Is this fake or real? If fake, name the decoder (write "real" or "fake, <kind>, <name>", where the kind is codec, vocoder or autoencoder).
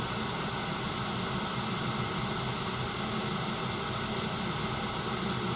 real